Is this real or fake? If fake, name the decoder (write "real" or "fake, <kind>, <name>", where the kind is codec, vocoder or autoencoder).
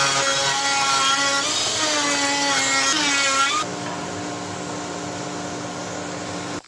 real